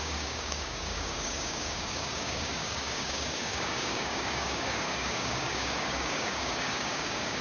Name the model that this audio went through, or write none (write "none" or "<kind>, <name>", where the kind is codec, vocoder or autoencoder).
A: codec, DAC